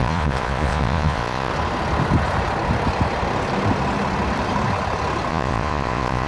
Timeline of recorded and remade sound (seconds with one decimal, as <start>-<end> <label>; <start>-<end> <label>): 0.0-1.5 remade; 1.5-5.3 recorded; 5.3-6.3 remade